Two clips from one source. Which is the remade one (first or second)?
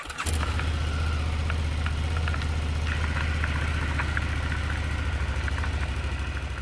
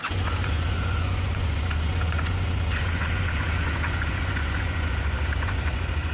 second